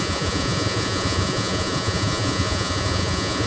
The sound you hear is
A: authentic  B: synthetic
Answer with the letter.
B